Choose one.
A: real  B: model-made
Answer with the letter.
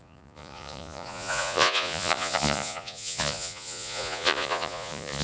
B